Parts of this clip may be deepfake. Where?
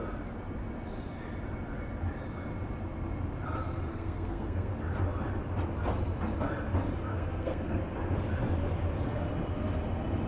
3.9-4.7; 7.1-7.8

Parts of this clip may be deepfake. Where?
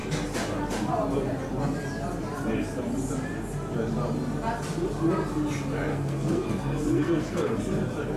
5.9-7.6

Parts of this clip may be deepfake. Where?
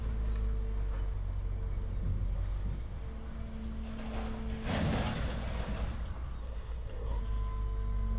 6.4-7.2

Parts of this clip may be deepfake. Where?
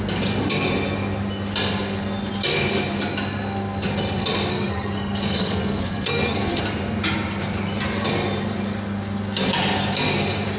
4.5-6.6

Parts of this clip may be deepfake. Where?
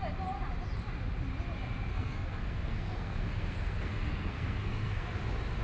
1.9-5.1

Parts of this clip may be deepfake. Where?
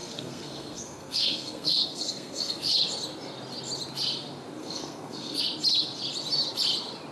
0.0-2.7; 4.6-5.4